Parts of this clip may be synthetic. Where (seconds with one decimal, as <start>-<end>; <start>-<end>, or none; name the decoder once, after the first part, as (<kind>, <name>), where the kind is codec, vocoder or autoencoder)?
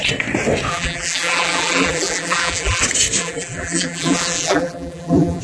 0.7-2.8 (vocoder, BigVGAN v2); 3.2-5.4